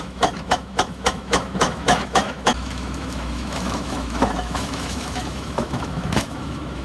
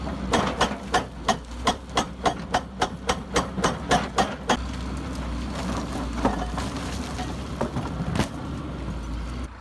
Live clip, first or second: second